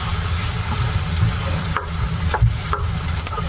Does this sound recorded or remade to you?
remade